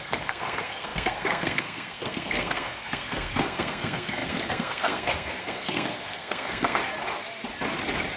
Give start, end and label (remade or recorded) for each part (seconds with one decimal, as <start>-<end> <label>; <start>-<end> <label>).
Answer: 0.0-6.8 remade; 6.8-8.2 recorded